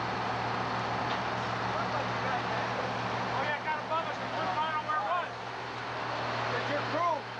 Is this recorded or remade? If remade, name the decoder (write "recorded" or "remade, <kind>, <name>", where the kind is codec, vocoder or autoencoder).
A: recorded